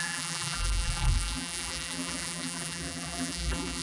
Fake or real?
fake